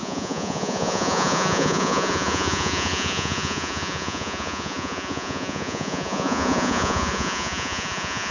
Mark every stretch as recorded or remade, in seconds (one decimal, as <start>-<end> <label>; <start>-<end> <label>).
0.0-8.3 remade